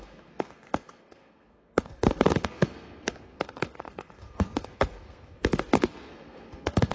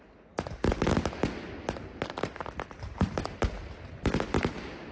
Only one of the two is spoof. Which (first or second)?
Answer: first